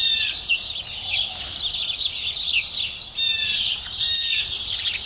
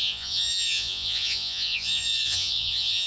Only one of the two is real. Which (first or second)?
first